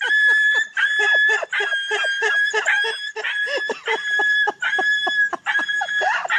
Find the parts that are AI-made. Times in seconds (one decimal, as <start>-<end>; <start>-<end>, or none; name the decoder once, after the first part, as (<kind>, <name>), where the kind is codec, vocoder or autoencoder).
none